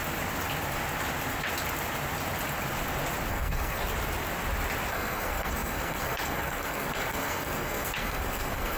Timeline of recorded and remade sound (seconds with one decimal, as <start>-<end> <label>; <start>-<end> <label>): 0.0-3.3 recorded; 3.3-3.8 remade; 3.8-4.9 recorded; 4.9-8.8 remade